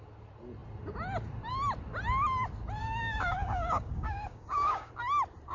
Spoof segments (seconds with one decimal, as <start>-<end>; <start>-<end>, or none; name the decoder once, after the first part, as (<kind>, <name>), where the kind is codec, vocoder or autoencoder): 2.8-4.9 (codec, DAC)